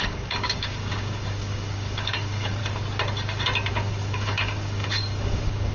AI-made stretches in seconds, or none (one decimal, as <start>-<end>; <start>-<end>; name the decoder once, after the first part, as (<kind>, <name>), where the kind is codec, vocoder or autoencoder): 0.0-2.6 (codec, DAC); 3.7-5.7